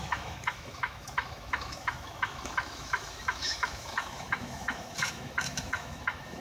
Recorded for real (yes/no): no